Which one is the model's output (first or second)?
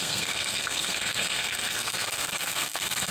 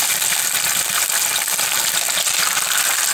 first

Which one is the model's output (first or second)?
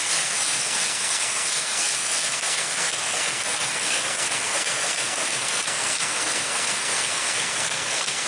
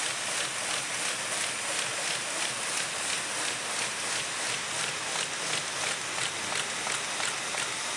first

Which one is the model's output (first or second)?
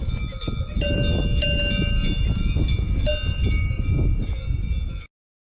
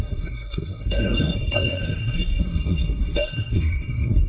second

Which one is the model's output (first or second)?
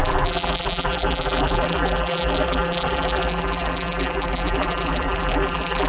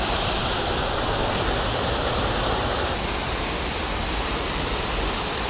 first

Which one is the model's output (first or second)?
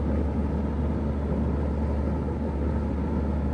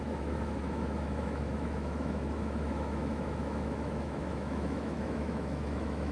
second